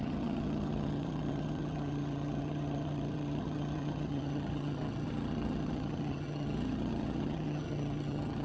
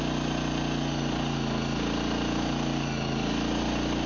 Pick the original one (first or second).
second